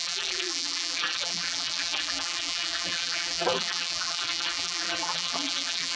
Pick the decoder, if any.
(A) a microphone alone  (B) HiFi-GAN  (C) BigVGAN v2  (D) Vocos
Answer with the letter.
C